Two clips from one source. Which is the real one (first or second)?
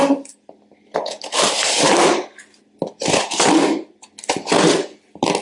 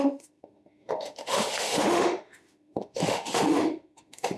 first